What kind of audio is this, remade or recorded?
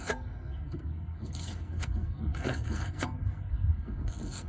remade